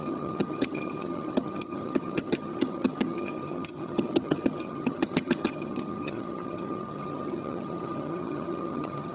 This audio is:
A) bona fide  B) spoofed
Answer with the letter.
B